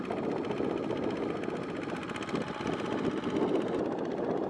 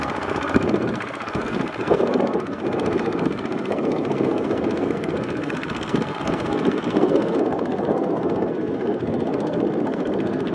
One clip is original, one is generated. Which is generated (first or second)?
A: second